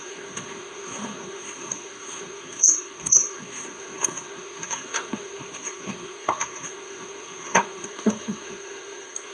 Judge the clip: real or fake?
fake